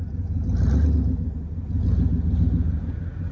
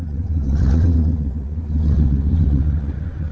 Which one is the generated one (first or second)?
second